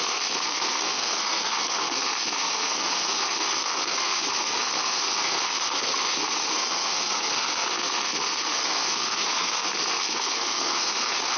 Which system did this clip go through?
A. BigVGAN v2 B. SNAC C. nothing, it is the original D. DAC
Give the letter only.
B